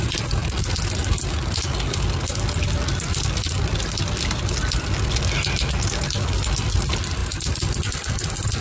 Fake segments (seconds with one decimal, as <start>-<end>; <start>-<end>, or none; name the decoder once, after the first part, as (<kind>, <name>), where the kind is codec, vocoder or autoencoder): none